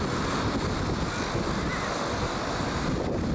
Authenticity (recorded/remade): recorded